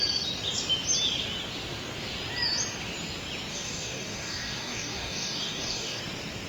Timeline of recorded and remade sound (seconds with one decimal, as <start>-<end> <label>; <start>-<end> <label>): 0.0-3.5 recorded; 3.5-6.0 remade; 6.0-6.5 recorded